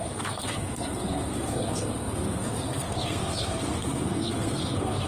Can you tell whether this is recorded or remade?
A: remade